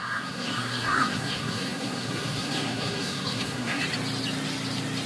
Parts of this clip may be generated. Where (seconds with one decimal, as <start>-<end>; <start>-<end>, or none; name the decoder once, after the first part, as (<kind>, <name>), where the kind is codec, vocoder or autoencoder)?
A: 0.0-3.8 (codec, SNAC)

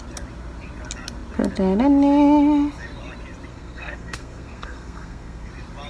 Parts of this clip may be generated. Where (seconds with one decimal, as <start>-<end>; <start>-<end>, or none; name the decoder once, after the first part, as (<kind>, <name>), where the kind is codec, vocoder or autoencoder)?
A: 3.5-5.5 (codec, SNAC)